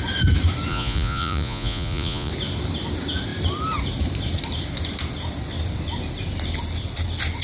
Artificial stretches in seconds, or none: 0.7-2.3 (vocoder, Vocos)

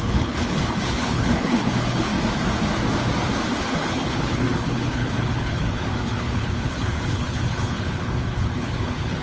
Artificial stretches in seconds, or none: 0.0-2.1 (codec, HILCodec); 3.6-9.2

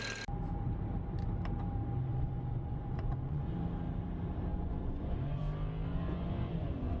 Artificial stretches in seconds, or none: 2.1-3.5 (vocoder, Vocos); 4.5-5.4; 5.9-7.0